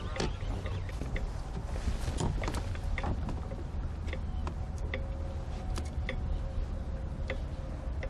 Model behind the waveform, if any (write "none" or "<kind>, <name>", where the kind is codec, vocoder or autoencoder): none